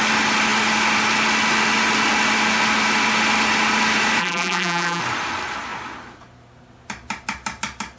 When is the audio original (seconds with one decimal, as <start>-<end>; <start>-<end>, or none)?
0.0-4.2; 5.0-8.0